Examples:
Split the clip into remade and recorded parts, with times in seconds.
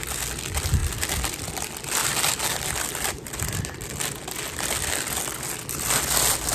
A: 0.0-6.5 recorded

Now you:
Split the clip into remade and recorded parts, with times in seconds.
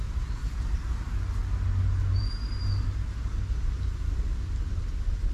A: 0.0-5.3 recorded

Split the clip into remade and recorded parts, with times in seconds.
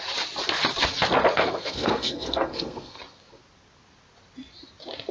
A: 0.0-1.3 recorded; 1.3-3.0 remade; 3.0-5.1 recorded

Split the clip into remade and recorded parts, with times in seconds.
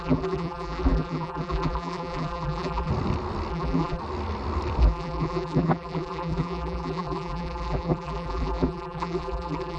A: 0.0-2.9 remade; 2.9-3.5 recorded; 3.5-4.0 remade; 4.0-4.8 recorded; 4.8-9.8 remade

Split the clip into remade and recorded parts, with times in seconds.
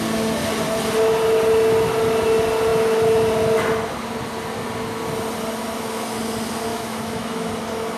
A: 0.0-6.7 recorded; 6.7-7.5 remade; 7.5-8.0 recorded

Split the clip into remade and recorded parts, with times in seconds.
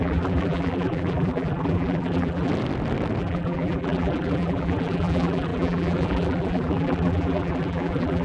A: 0.0-2.5 remade; 2.5-3.2 recorded; 3.2-8.2 remade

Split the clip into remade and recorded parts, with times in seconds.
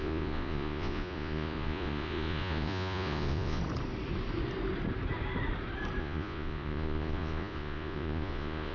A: 0.0-3.6 remade; 3.6-6.0 recorded; 6.0-8.7 remade